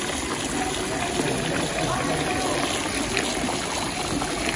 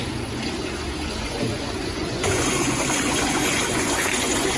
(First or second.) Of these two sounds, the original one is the first